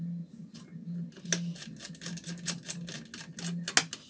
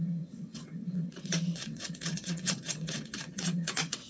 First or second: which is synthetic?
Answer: second